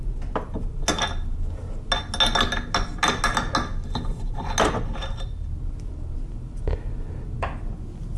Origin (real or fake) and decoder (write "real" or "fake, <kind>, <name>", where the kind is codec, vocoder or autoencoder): real